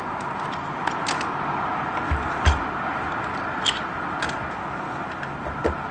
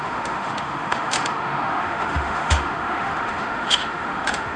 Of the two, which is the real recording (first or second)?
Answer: first